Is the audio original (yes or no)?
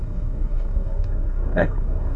no